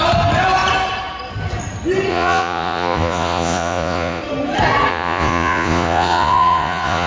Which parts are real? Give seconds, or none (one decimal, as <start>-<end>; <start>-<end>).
0.0-2.1; 4.2-4.9